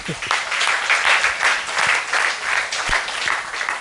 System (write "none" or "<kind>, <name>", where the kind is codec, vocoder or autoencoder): none